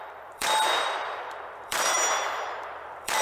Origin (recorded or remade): remade